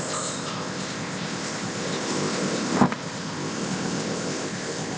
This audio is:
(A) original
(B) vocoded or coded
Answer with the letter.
B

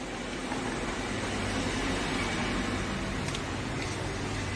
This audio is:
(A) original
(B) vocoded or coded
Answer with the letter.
A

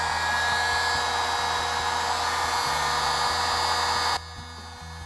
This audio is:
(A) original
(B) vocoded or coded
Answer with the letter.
A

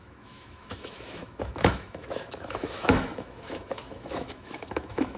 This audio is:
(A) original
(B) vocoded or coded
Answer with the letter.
B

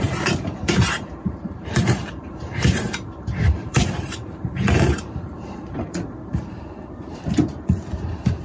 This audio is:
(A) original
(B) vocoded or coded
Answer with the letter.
B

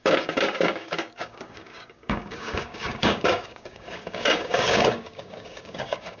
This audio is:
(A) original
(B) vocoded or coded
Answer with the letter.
B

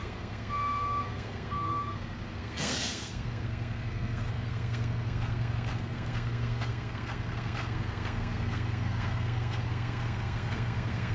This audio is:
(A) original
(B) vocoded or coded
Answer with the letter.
B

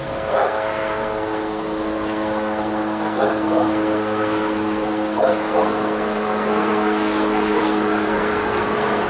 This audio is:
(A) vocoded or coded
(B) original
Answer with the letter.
A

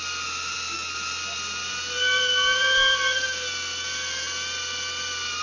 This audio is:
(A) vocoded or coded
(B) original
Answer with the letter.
B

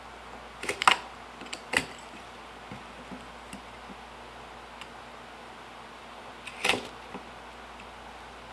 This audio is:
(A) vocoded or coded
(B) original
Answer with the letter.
B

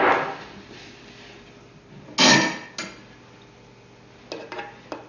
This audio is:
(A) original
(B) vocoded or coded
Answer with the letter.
A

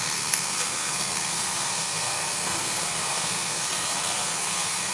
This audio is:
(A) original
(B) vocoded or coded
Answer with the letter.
B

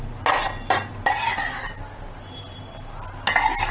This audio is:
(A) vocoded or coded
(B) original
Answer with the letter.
B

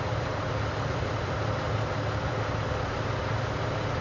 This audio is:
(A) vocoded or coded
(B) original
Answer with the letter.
A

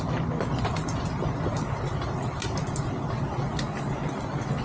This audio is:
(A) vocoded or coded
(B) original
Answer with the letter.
B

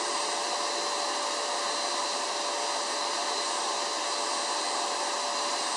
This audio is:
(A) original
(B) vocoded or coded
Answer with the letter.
A